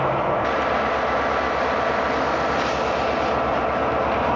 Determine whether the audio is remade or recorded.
recorded